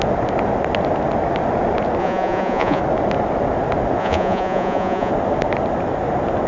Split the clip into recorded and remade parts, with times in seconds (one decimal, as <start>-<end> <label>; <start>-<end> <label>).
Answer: 0.0-2.0 recorded; 2.0-2.8 remade; 2.8-4.0 recorded; 4.0-5.1 remade; 5.1-6.5 recorded